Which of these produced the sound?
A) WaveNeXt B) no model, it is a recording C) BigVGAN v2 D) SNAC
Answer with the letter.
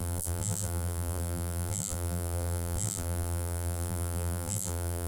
C